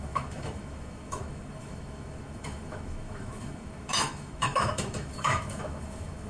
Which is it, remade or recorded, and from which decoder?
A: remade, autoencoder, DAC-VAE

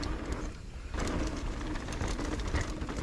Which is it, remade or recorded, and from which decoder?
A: recorded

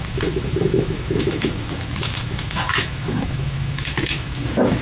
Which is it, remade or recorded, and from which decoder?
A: remade, autoencoder, DAC-VAE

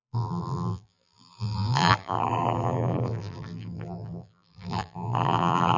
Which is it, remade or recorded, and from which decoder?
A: remade, vocoder, BigVGAN v2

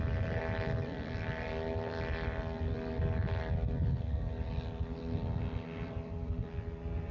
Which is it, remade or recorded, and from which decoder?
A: recorded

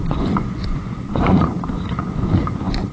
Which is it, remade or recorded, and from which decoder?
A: remade, vocoder, Vocos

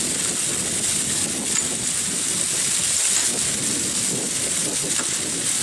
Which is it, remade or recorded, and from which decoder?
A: recorded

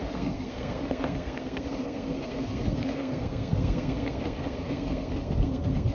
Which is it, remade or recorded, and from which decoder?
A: remade, codec, SNAC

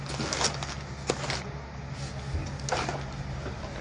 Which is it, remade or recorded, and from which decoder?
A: recorded